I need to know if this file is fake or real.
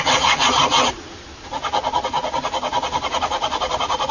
real